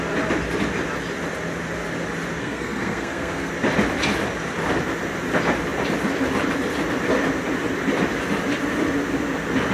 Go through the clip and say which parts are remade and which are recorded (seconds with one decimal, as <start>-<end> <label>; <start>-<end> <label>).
0.0-2.4 recorded; 2.4-3.5 remade; 3.5-9.7 recorded

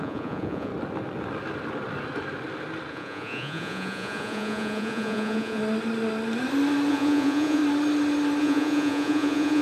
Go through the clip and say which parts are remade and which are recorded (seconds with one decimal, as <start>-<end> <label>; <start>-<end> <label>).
0.0-0.7 remade; 0.7-2.9 recorded; 2.9-5.6 remade; 5.6-6.9 recorded; 6.9-7.6 remade; 7.6-8.4 recorded; 8.4-9.6 remade

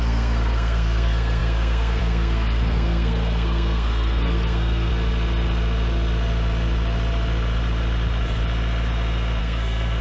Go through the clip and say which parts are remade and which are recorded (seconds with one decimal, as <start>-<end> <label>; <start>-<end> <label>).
0.0-4.9 remade; 4.9-9.4 recorded; 9.4-10.0 remade